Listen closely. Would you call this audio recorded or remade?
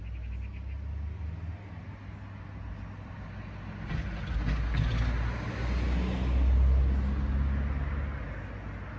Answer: recorded